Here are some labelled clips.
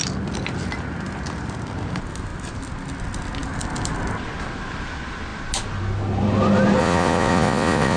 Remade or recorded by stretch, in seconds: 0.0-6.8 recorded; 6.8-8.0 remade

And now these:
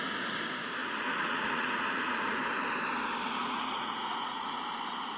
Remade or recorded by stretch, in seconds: 0.0-0.8 recorded; 0.8-2.4 remade; 2.4-3.4 recorded; 3.4-4.6 remade; 4.6-5.2 recorded

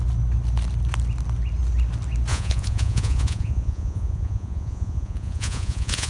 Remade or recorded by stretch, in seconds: 0.0-2.3 recorded; 2.3-6.1 remade

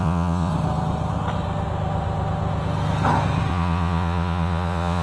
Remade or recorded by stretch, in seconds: 0.0-0.5 remade; 0.5-3.5 recorded; 3.5-5.0 remade

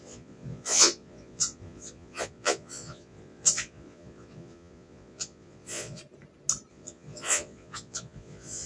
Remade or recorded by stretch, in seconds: 0.0-6.0 remade; 6.0-6.7 recorded; 6.7-8.7 remade